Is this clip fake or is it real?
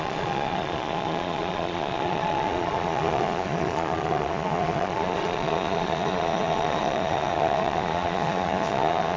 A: fake